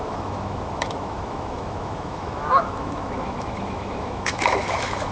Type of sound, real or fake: fake